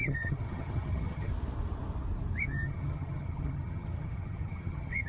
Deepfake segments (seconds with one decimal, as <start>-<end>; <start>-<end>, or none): 0.0-1.3; 2.4-5.1